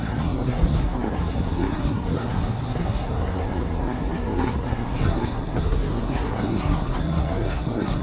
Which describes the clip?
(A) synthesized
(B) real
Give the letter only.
A